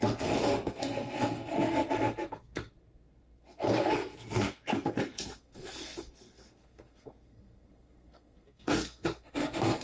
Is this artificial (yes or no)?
yes